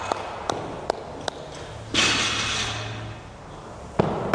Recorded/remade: recorded